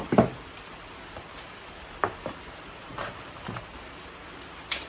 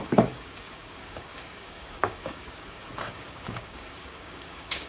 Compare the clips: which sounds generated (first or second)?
second